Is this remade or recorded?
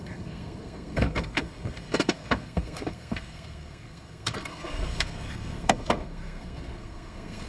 remade